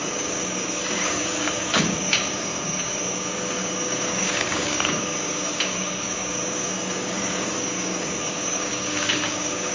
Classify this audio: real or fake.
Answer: fake